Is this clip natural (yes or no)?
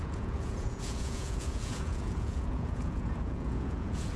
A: no